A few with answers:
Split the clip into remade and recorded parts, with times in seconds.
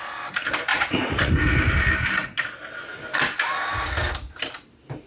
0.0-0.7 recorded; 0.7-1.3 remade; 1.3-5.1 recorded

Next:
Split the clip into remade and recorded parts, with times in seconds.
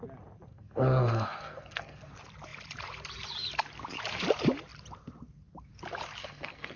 0.0-0.5 recorded; 0.5-2.1 remade; 2.1-6.2 recorded; 6.2-6.8 remade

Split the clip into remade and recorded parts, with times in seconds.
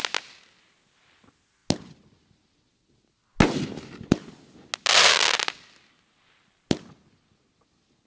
0.0-8.1 recorded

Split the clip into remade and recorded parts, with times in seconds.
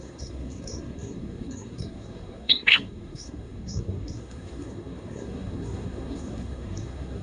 0.0-7.2 remade